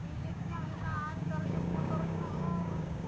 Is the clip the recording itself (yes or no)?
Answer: no